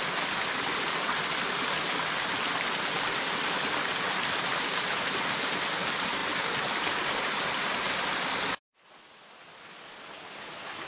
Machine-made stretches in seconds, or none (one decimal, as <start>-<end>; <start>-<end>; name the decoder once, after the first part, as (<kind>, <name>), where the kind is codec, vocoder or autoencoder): none